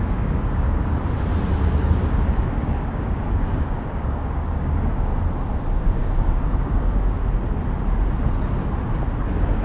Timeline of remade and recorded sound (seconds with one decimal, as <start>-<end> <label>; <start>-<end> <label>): 0.0-0.9 remade; 0.9-2.6 recorded; 2.6-5.1 remade; 5.1-5.8 recorded; 5.8-7.2 remade; 7.2-9.2 recorded; 9.2-9.6 remade